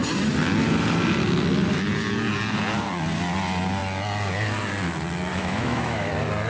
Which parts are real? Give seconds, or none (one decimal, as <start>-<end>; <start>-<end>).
0.0-5.3; 6.1-6.5